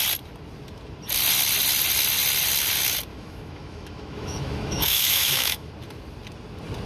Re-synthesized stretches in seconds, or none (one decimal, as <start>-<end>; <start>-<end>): 3.1-5.7